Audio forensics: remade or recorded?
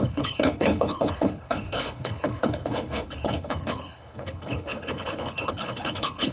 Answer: remade